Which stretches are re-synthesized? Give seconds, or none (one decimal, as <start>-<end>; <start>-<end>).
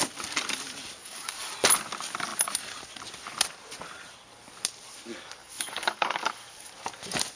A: 1.0-1.5; 5.4-6.7